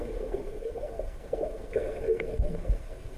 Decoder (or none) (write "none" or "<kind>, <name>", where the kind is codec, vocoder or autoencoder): codec, SNAC